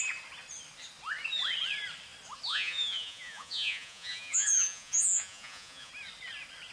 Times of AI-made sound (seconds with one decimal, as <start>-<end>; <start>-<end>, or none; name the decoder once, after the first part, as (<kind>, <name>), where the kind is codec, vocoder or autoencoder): 2.5-5.9 (vocoder, Vocos)